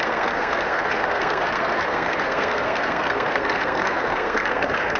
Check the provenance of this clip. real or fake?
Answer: fake